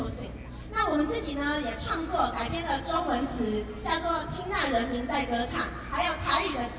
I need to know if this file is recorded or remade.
recorded